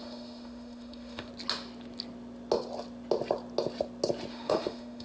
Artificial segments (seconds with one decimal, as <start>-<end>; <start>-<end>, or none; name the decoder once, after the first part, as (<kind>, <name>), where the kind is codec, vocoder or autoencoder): 0.0-1.3 (autoencoder, DAC-VAE); 4.3-5.0